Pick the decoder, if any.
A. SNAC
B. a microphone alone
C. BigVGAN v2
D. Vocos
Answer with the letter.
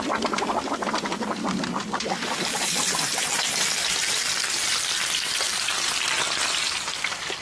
C